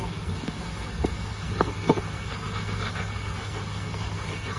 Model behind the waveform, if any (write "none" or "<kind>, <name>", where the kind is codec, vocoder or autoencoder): codec, SNAC